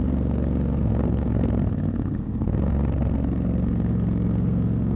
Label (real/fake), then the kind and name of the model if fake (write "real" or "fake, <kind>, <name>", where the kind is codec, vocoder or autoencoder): fake, codec, SNAC